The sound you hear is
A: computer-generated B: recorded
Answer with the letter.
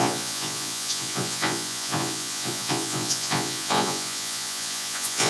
A